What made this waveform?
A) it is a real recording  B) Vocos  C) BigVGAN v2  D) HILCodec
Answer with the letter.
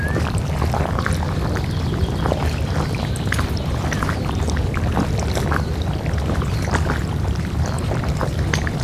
C